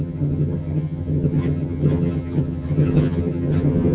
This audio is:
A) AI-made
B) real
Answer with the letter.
A